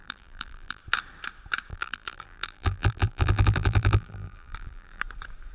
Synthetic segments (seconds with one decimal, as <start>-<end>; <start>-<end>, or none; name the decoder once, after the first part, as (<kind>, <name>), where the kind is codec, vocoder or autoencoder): 0.0-0.8 (vocoder, BigVGAN v2); 1.7-5.0